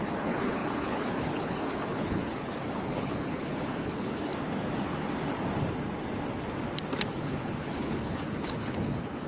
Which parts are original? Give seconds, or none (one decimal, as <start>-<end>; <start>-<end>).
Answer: 4.3-7.1